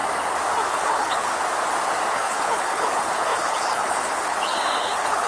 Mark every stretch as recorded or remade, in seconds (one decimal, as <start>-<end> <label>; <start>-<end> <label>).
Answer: 0.0-0.7 recorded; 0.7-1.3 remade; 1.3-2.1 recorded; 2.1-5.3 remade